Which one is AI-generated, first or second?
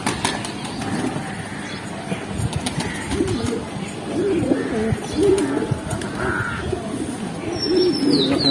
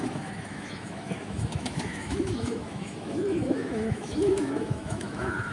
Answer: second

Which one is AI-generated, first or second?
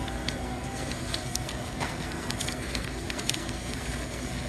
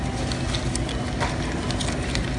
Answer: first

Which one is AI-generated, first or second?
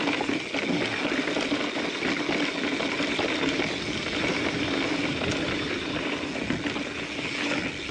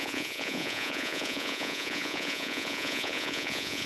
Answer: second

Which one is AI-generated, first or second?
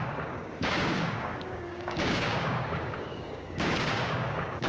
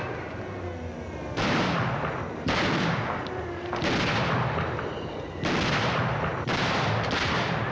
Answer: first